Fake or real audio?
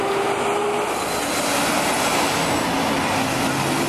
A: real